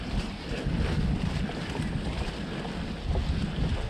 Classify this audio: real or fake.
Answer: real